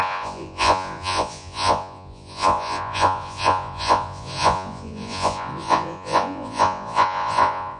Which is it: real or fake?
fake